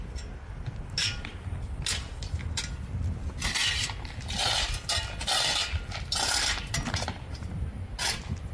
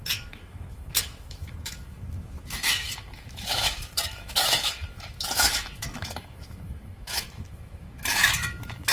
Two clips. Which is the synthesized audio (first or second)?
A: second